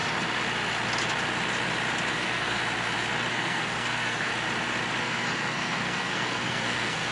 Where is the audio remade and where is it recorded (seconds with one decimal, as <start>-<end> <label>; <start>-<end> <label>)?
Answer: 0.0-2.1 recorded; 2.1-2.6 remade; 2.6-3.3 recorded; 3.3-4.3 remade; 4.3-5.0 recorded; 5.0-7.1 remade